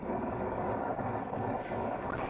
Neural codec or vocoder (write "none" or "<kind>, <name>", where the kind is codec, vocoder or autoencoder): codec, DAC